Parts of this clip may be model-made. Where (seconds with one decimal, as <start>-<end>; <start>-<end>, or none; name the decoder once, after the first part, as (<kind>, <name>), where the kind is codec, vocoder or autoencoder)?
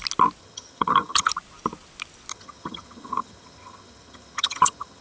0.4-1.3 (vocoder, HiFi-GAN); 2.3-5.0